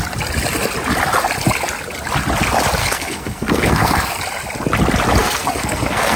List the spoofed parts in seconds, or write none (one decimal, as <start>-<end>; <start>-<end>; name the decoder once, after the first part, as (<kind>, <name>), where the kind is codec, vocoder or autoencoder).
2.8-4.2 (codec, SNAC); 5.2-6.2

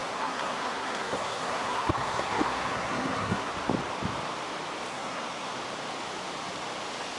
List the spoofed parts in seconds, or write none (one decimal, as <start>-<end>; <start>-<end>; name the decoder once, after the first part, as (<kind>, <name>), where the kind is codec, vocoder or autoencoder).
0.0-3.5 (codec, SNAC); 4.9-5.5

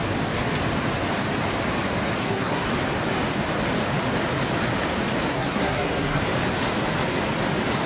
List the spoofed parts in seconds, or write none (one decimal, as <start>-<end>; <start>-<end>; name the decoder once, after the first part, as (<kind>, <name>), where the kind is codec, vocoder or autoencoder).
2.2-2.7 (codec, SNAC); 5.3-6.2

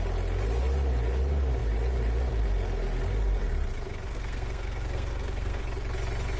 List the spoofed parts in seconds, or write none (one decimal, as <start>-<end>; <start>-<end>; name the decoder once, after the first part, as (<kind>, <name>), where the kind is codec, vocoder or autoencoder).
4.1-5.6 (codec, SNAC)

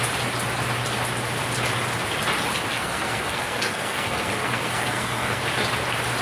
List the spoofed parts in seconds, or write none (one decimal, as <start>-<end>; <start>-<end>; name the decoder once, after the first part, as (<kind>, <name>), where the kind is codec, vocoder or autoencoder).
2.7-5.4 (codec, SNAC)